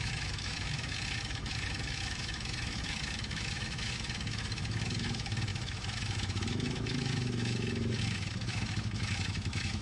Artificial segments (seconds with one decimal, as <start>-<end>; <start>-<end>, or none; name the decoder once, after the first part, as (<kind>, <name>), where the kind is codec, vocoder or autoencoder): 0.0-9.8 (autoencoder, DAC-VAE)